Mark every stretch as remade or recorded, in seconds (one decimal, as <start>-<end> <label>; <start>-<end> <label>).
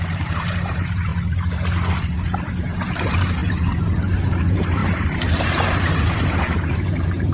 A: 0.0-1.1 remade; 1.1-2.5 recorded; 2.5-7.3 remade